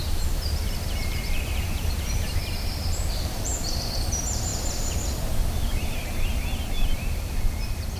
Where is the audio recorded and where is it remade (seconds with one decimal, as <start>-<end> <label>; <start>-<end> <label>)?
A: 0.0-2.4 remade; 2.4-3.1 recorded; 3.1-4.5 remade; 4.5-5.4 recorded; 5.4-8.0 remade